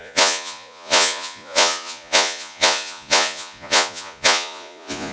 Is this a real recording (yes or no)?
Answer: no